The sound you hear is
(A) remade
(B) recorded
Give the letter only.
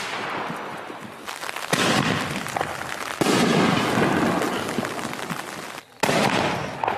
B